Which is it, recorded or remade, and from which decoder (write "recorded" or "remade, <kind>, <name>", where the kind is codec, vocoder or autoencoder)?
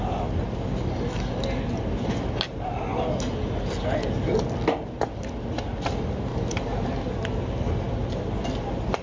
recorded